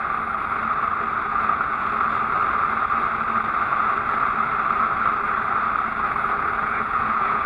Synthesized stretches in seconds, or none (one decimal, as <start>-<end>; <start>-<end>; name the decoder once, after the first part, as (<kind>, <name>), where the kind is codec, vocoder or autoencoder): 1.3-1.9 (vocoder, Vocos); 6.6-7.5